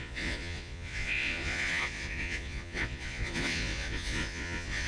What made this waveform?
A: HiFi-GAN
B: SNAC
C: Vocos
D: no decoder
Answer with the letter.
C